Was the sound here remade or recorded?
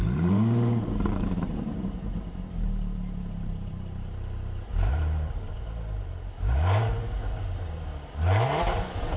remade